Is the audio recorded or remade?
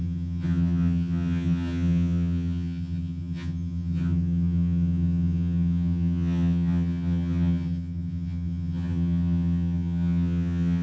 remade